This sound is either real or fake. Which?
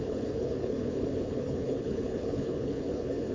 fake